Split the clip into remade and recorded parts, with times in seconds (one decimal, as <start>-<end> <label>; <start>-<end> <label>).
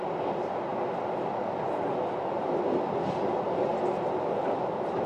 0.0-5.1 recorded